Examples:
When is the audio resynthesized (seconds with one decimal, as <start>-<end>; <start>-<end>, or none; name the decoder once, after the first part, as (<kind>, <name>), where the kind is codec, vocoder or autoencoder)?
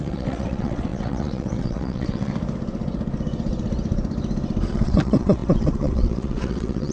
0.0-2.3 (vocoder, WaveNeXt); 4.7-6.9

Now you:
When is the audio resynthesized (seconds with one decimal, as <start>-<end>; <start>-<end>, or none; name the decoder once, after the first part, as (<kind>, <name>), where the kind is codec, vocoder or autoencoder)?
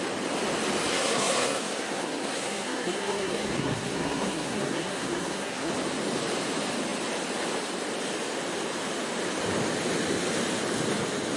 0.9-5.7 (codec, SNAC)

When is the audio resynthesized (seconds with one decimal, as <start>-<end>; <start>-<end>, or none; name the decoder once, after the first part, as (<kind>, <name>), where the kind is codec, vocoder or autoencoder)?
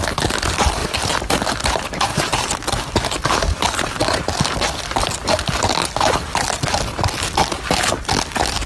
0.8-2.9 (vocoder, BigVGAN v2)